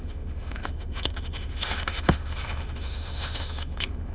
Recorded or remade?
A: remade